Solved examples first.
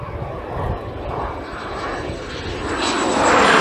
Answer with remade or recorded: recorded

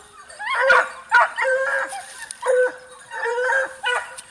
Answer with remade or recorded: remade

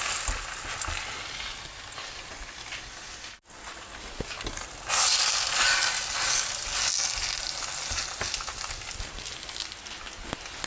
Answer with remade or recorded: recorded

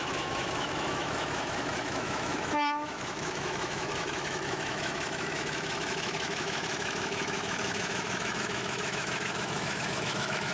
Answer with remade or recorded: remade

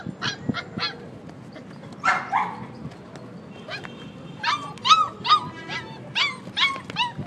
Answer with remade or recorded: recorded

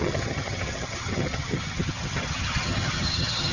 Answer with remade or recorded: remade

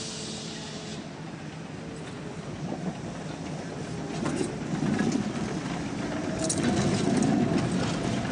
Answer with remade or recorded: recorded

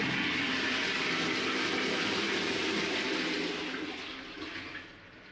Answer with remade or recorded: recorded